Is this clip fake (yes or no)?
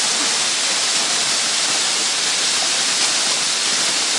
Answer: no